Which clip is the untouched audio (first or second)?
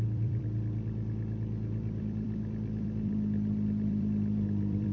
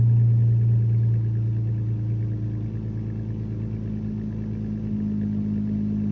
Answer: second